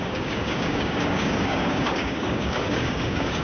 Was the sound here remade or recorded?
remade